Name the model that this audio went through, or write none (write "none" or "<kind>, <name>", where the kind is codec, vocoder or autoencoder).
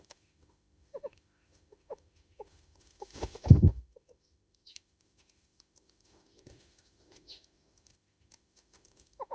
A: autoencoder, DAC-VAE